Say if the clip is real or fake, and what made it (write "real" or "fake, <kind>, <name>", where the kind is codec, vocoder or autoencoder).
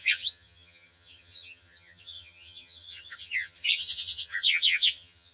fake, vocoder, HiFi-GAN